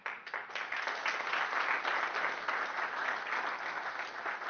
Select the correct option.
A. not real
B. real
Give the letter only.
B